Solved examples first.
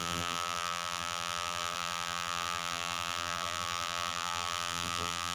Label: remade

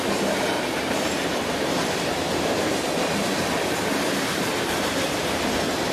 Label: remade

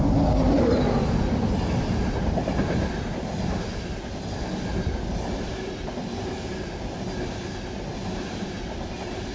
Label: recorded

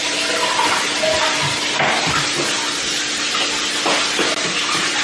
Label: recorded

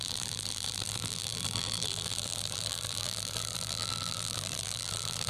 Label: remade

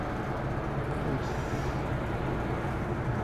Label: recorded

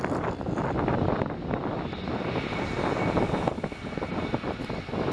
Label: recorded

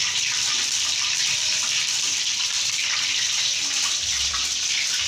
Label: remade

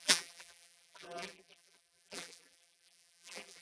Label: remade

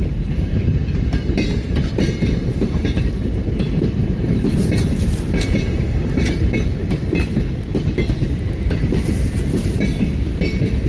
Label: remade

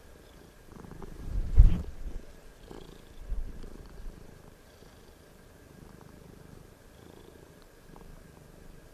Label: remade